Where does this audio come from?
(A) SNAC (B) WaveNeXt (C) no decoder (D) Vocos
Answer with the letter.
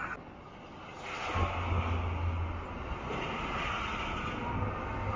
C